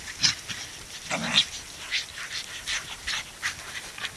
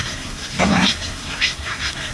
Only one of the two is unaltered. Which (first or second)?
first